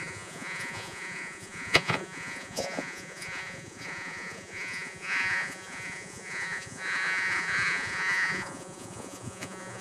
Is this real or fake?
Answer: fake